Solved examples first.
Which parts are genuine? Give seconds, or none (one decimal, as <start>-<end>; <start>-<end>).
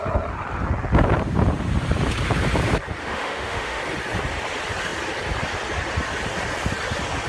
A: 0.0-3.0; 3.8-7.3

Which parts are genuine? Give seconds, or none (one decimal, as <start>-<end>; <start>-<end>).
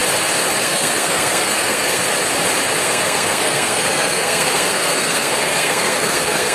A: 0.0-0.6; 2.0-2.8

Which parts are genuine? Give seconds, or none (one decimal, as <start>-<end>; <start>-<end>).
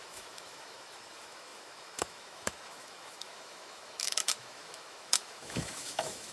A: none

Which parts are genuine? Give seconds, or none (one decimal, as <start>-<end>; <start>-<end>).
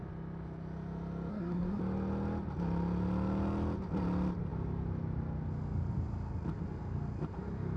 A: 0.0-1.3; 1.8-7.8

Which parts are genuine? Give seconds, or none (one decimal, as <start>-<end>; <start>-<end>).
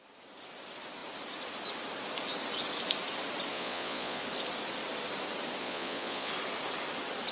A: 0.0-3.5; 4.2-5.6; 6.3-7.3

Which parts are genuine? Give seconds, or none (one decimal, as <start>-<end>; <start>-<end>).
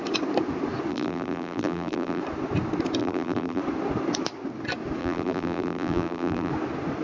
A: 0.0-0.9; 2.2-3.0; 3.6-5.0; 6.5-7.0